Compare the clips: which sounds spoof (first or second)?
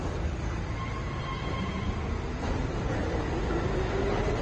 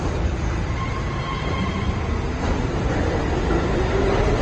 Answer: second